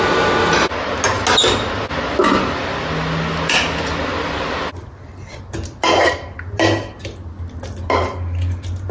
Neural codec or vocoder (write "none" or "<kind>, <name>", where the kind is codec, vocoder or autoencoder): none